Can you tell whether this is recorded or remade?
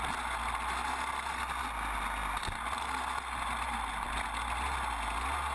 recorded